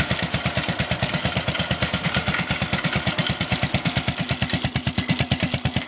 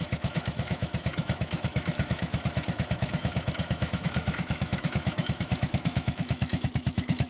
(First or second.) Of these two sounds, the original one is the first